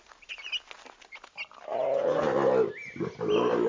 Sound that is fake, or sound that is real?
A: real